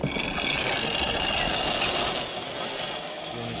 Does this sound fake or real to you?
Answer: real